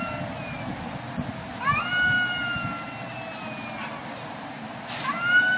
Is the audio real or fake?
real